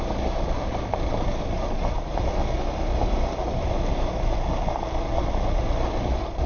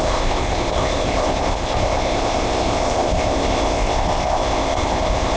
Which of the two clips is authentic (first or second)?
first